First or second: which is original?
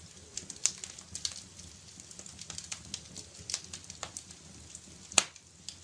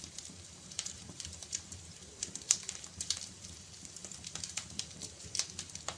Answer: first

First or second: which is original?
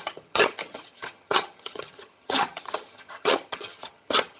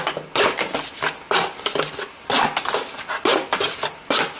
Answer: second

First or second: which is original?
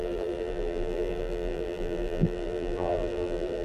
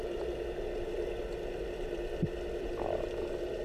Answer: second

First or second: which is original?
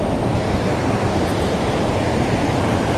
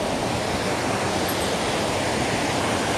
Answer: second